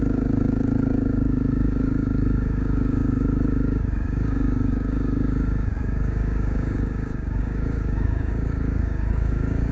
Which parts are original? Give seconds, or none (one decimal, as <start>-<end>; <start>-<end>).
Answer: none